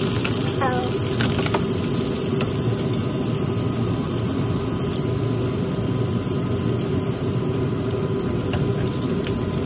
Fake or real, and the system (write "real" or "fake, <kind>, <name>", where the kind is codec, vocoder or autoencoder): real